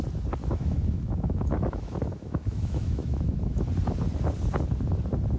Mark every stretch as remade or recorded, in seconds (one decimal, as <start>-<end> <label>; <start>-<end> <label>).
0.0-0.4 recorded; 0.4-3.6 remade; 3.6-5.4 recorded